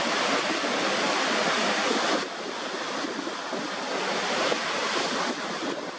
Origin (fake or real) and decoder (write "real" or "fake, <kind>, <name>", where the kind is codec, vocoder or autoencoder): real